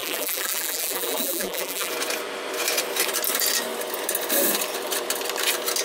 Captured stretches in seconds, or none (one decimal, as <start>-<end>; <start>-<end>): 1.9-5.8